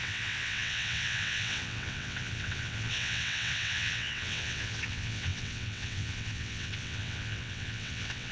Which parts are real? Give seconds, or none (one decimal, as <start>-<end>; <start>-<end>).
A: none